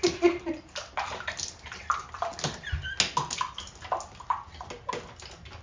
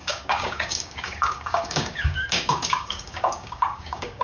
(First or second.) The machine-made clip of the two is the second